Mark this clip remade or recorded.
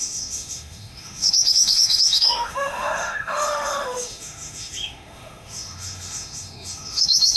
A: remade